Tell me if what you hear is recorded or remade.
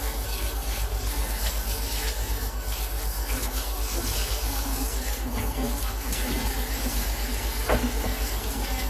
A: remade